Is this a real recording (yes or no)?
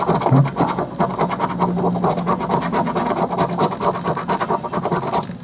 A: yes